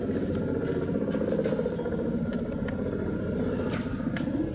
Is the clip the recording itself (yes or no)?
no